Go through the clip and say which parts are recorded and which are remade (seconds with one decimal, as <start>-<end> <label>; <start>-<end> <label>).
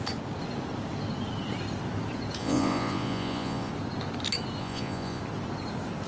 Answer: 0.0-2.4 recorded; 2.4-3.7 remade; 3.7-4.6 recorded; 4.6-5.2 remade; 5.2-6.1 recorded